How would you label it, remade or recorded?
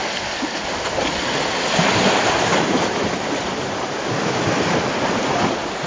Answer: recorded